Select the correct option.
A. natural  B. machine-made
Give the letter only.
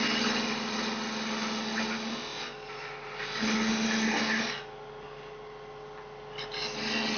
A